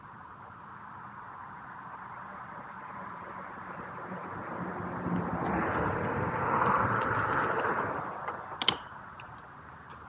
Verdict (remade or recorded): recorded